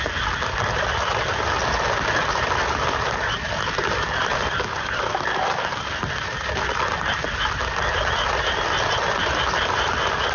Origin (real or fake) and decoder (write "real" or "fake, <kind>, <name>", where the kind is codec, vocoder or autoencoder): real